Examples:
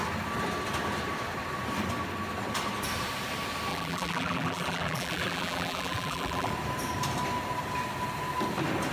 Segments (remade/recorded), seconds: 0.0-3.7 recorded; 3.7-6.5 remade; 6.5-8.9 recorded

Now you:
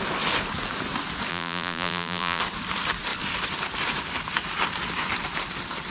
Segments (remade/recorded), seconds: 0.0-1.3 recorded; 1.3-2.4 remade; 2.4-5.9 recorded

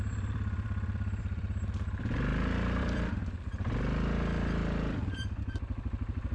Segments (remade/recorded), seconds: 0.0-6.3 remade

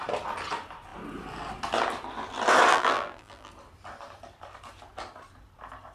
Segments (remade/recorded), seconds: 0.0-2.7 recorded; 2.7-3.5 remade; 3.5-5.9 recorded

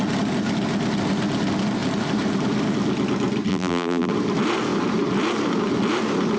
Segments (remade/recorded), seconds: 0.0-3.5 recorded; 3.5-4.1 remade; 4.1-6.4 recorded

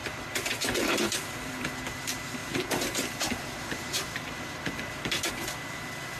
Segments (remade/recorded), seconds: 0.0-1.7 remade; 1.7-2.4 recorded; 2.4-5.3 remade; 5.3-6.2 recorded

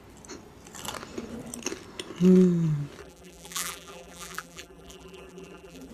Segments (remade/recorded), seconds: 0.0-3.0 recorded; 3.0-5.9 remade